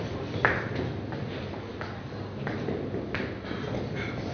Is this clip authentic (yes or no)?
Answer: yes